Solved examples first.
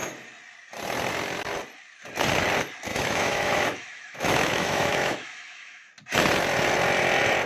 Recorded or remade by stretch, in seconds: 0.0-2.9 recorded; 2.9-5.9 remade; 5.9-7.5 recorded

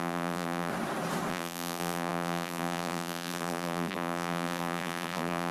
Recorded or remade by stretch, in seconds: 0.0-0.7 remade; 0.7-1.3 recorded; 1.3-5.5 remade

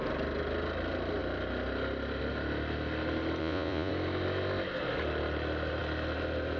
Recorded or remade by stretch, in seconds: 0.0-3.4 recorded; 3.4-3.9 remade; 3.9-6.6 recorded

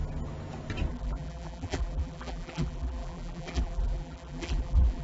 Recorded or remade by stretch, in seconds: 0.0-0.9 recorded; 0.9-5.0 remade

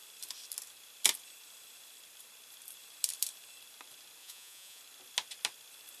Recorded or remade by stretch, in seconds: 0.0-4.2 recorded; 4.2-4.8 remade; 4.8-6.0 recorded